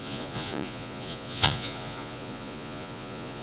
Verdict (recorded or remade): remade